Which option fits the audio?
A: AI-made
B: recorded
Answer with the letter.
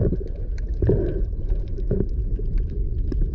A